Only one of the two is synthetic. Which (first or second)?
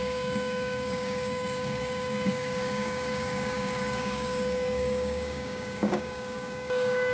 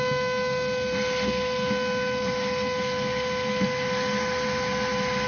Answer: first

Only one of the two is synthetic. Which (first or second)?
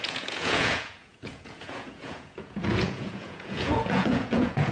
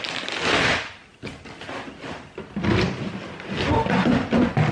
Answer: first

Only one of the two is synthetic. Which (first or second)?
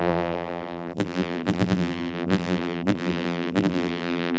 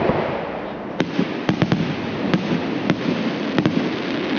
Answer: first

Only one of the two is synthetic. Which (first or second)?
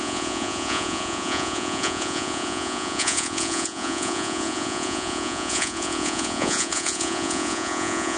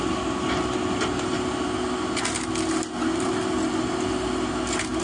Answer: first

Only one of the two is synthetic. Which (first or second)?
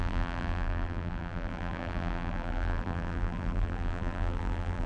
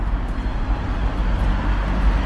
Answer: first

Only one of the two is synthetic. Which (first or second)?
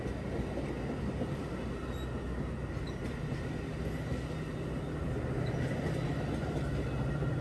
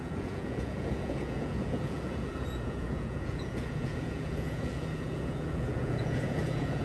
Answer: second